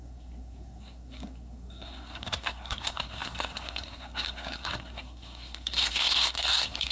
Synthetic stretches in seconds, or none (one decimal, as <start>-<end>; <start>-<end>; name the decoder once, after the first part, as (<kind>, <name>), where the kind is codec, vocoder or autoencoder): 0.0-6.9 (codec, SNAC)